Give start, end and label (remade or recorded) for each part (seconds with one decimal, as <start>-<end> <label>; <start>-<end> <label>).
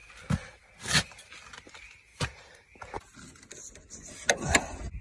0.0-2.1 recorded; 2.1-2.8 remade; 2.8-5.0 recorded